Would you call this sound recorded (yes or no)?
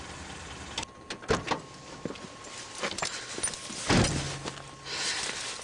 yes